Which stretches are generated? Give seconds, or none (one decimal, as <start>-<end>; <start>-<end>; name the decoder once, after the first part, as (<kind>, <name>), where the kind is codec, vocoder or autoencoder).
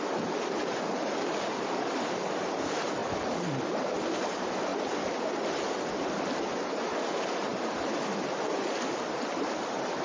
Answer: 0.0-4.7 (vocoder, BigVGAN v2); 6.8-7.5; 9.5-10.0